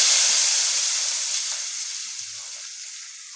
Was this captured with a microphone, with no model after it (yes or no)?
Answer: no